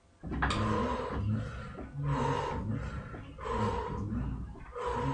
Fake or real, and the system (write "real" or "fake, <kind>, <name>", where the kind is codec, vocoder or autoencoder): real